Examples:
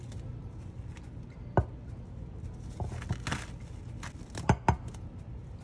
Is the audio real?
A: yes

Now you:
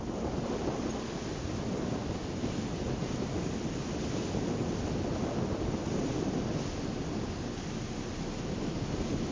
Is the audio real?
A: yes